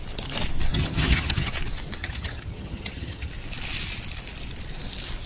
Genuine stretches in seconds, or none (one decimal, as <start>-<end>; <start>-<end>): 0.0-0.7; 1.5-2.0; 3.3-5.3

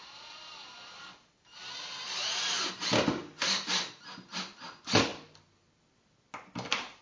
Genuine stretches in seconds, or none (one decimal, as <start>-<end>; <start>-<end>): 0.0-7.0

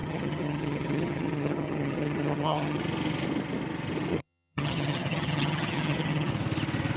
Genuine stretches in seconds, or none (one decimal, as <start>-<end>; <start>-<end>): 2.8-4.1; 6.3-7.0